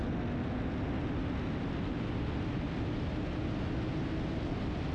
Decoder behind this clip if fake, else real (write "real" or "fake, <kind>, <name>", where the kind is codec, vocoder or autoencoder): real